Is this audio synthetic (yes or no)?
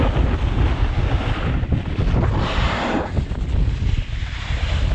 no